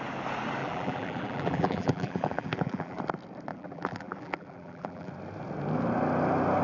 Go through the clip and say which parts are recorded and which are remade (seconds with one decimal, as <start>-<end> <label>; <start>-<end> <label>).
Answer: 0.0-0.6 recorded; 0.6-3.0 remade; 3.0-3.5 recorded; 3.5-5.1 remade; 5.1-6.6 recorded